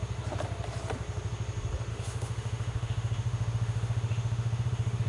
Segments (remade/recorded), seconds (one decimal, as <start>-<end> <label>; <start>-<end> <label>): 0.0-1.9 recorded; 1.9-5.1 remade